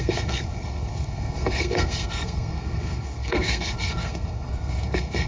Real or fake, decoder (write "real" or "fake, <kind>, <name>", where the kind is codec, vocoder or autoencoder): fake, codec, SNAC